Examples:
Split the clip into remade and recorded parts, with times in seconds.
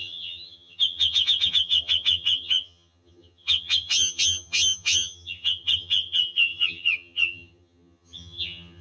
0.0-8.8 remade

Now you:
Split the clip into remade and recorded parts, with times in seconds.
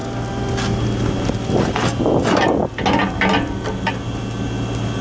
0.0-5.0 recorded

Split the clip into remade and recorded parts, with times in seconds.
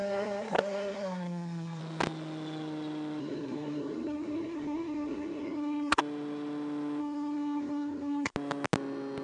0.0-1.8 remade; 1.8-3.2 recorded; 3.2-6.0 remade; 6.0-7.0 recorded; 7.0-8.3 remade; 8.3-9.2 recorded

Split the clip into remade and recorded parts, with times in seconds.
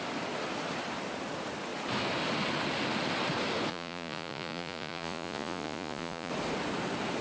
0.0-3.7 recorded; 3.7-6.3 remade; 6.3-7.2 recorded